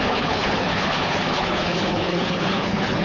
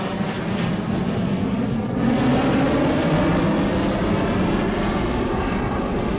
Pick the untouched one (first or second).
second